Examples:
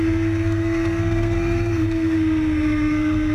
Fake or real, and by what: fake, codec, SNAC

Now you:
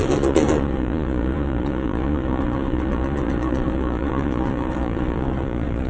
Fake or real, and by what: fake, vocoder, Vocos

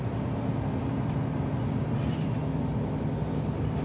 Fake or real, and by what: real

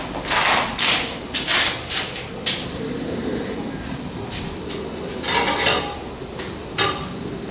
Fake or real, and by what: real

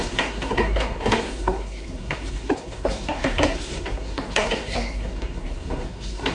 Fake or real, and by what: fake, codec, SNAC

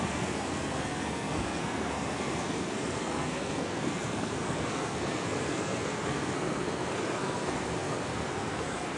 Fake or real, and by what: fake, codec, SNAC